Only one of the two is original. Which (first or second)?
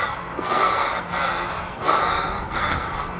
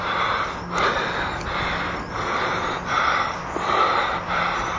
second